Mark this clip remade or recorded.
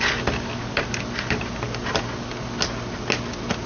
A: recorded